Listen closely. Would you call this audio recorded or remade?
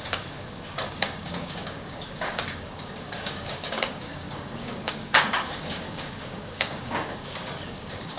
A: remade